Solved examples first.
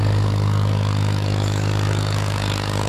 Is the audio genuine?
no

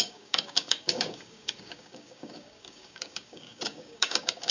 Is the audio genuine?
no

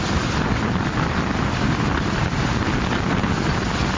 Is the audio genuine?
yes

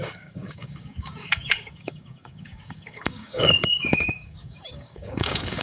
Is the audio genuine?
no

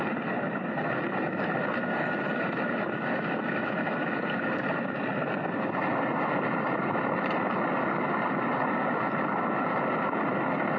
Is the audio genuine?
yes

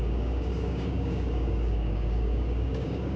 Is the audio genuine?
no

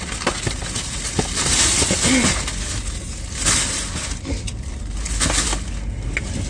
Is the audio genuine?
yes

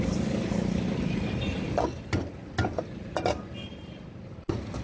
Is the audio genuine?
yes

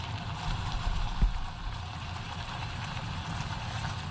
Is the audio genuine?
yes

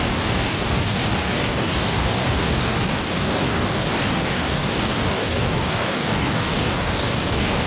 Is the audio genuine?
no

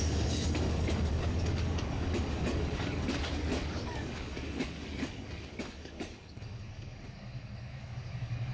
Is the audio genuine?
no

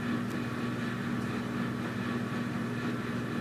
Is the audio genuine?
yes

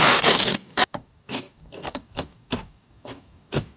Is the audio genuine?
no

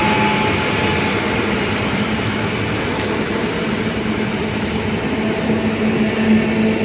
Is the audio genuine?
yes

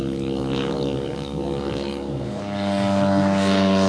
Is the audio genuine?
no